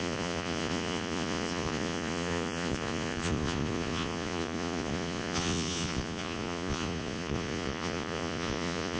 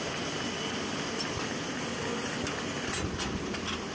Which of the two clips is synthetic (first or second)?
first